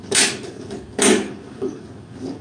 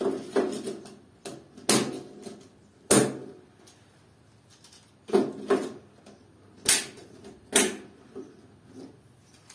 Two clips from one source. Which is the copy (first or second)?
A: first